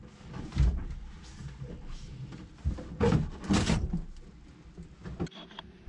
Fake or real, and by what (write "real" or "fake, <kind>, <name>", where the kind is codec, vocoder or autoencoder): real